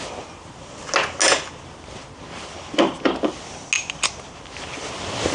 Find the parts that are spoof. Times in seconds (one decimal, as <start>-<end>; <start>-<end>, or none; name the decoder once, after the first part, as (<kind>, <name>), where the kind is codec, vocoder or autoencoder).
none